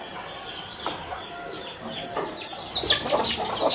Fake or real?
real